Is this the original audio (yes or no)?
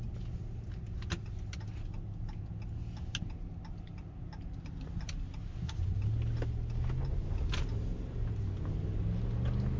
yes